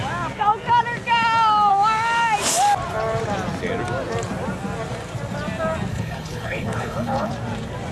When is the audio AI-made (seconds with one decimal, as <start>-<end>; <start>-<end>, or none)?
5.9-7.3